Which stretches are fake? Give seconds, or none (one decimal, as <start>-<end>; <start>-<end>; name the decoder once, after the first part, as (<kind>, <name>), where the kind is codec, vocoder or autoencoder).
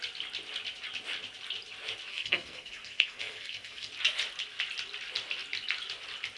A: 2.1-3.9 (codec, SNAC)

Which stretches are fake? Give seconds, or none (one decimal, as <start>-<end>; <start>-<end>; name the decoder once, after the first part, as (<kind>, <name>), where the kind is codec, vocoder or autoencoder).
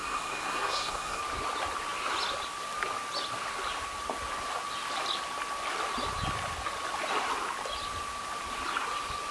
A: 0.0-1.2 (codec, SNAC)